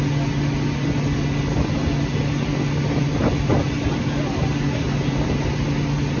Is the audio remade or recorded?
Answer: recorded